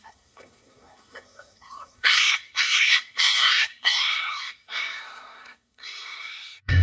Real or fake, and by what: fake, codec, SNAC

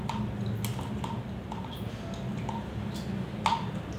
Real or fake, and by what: real